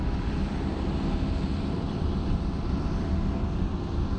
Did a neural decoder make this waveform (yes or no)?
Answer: no